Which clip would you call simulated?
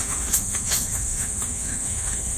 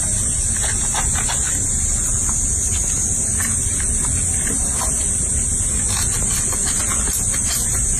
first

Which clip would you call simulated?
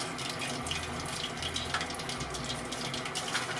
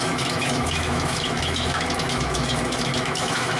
second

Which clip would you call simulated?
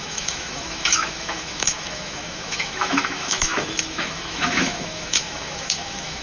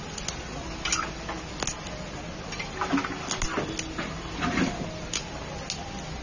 first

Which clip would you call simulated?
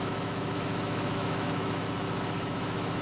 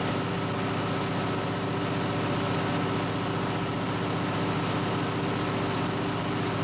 first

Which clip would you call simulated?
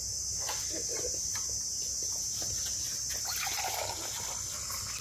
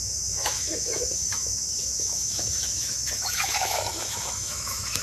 second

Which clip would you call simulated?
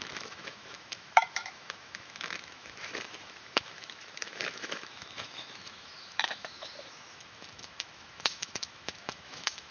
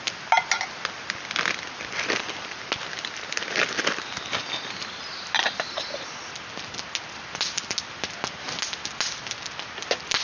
first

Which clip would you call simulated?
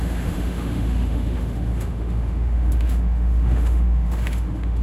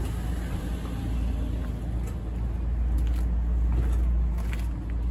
first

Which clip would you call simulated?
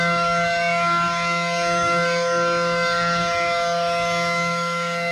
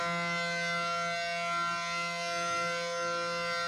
first